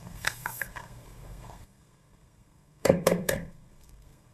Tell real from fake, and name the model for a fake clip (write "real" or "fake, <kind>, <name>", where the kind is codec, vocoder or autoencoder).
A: fake, codec, SNAC